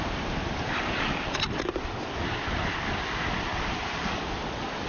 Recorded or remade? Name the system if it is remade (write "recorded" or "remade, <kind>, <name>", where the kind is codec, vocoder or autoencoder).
recorded